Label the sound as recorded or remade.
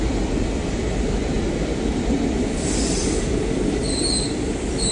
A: recorded